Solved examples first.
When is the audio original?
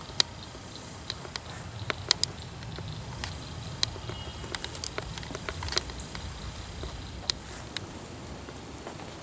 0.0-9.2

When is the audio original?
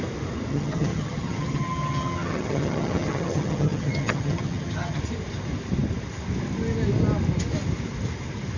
0.0-0.5; 5.0-8.6